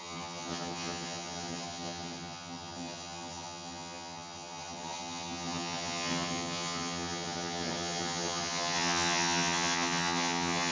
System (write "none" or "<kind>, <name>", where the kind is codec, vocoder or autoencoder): vocoder, HiFi-GAN